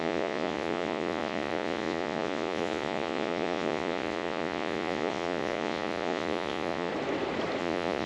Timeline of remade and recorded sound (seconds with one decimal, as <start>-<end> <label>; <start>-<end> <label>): 0.0-6.9 remade; 6.9-7.6 recorded; 7.6-8.1 remade